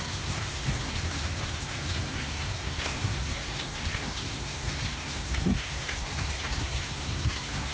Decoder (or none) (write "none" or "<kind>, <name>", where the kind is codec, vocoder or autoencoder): codec, SNAC